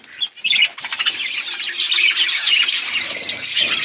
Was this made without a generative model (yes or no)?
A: yes